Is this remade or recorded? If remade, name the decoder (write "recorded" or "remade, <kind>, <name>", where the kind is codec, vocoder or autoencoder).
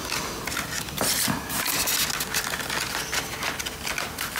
recorded